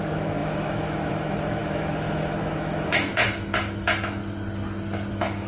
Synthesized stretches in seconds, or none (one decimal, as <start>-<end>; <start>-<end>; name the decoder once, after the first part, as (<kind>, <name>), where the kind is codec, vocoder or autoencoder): 0.0-4.2 (autoencoder, DAC-VAE); 5.1-5.5